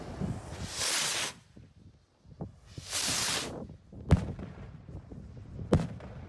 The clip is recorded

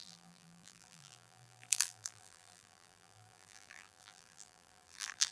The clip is remade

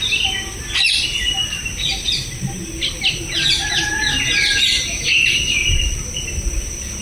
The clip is remade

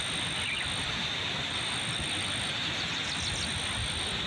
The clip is recorded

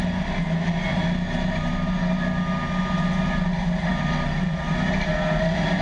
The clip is recorded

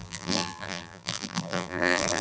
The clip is remade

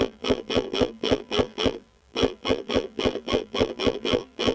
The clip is remade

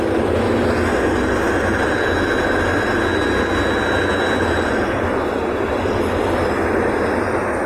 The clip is recorded